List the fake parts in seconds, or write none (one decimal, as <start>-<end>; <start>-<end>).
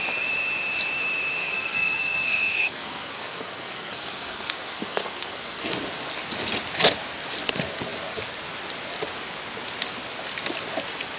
1.4-5.7